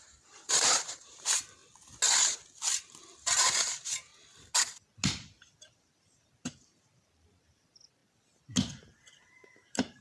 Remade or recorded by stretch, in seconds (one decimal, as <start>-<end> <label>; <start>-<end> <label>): 0.0-1.6 remade; 1.6-2.8 recorded; 2.8-4.1 remade; 4.1-5.8 recorded; 5.8-8.0 remade; 8.0-9.3 recorded; 9.3-10.0 remade